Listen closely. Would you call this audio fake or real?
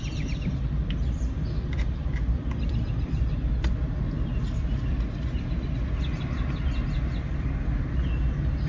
real